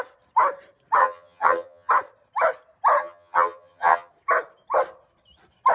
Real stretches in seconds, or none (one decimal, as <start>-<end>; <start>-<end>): 0.0-1.0; 1.9-3.0; 4.1-5.7